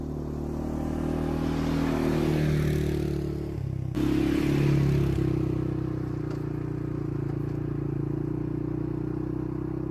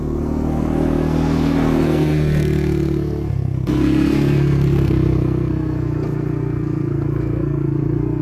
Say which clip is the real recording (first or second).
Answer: first